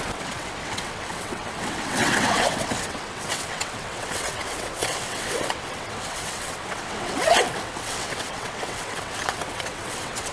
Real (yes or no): no